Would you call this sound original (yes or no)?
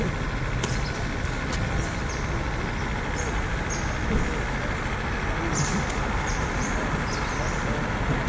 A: yes